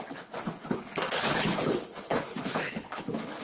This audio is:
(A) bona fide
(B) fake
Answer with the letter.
B